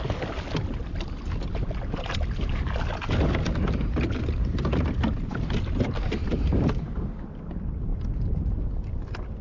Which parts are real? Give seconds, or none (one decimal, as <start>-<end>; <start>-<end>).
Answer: 0.0-9.4